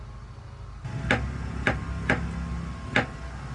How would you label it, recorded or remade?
recorded